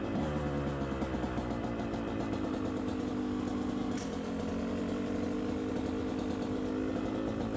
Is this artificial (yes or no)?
no